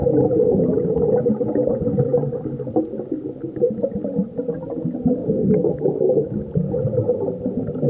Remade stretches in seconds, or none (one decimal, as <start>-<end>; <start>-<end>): 0.0-1.3; 5.2-6.4